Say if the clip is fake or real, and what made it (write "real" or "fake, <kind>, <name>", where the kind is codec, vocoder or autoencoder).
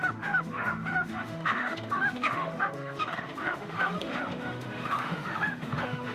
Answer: fake, autoencoder, DAC-VAE